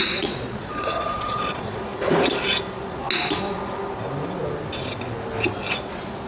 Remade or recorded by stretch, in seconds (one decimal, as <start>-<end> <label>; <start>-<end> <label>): 0.0-1.9 remade; 1.9-5.7 recorded; 5.7-6.3 remade